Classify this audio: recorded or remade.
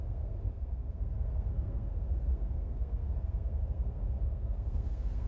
remade